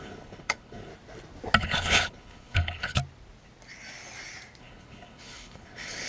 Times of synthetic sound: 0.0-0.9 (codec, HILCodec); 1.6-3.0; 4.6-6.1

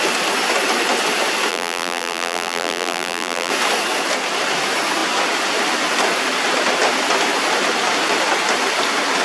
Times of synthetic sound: 1.5-3.5 (vocoder, BigVGAN v2)

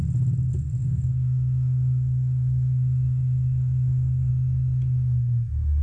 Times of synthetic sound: 0.8-4.3 (codec, SNAC)

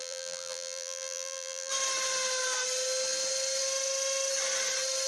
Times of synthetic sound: 0.0-1.7 (vocoder, BigVGAN v2)

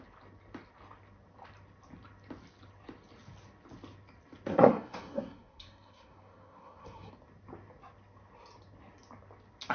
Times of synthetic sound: 4.5-7.1 (codec, SNAC)

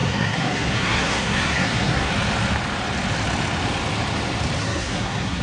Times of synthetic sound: 0.0-2.1 (codec, SNAC); 4.6-5.4

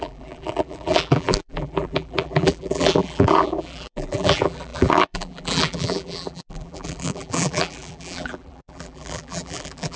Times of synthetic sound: 0.0-10.0 (vocoder, BigVGAN v2)

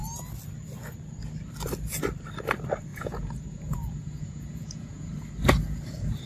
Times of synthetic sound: 2.9-5.1 (vocoder, Vocos)